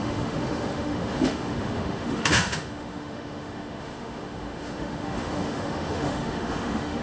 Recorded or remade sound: remade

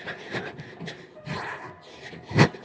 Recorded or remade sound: recorded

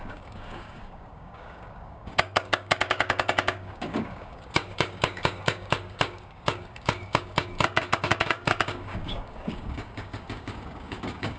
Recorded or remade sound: remade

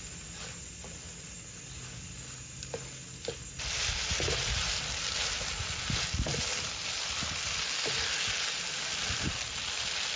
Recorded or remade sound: recorded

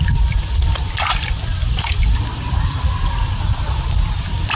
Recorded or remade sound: recorded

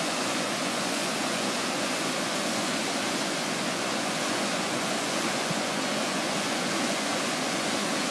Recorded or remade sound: remade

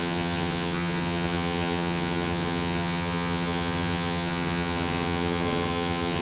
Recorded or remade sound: remade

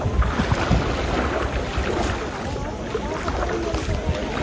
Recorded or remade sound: recorded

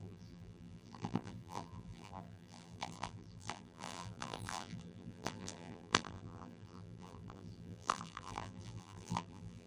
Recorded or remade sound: remade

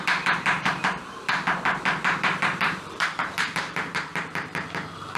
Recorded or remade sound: remade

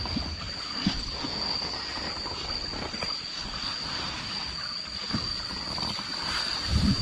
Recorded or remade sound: recorded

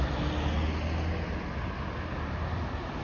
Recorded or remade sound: recorded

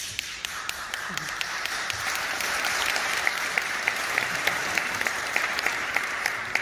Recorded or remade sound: remade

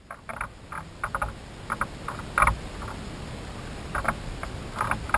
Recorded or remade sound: recorded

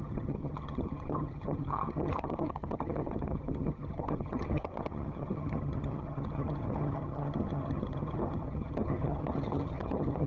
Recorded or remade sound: remade